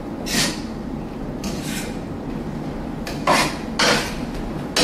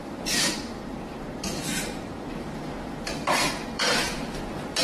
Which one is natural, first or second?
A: first